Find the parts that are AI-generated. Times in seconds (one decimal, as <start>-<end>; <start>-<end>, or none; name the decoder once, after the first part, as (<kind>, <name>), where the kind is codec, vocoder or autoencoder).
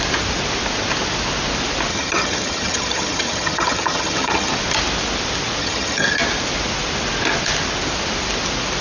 1.9-4.5 (vocoder, HiFi-GAN); 5.6-6.2